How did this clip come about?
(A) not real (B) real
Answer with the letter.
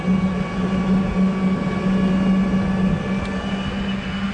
B